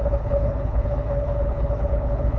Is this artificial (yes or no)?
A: yes